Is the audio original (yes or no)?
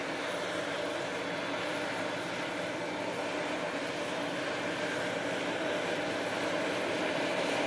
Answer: yes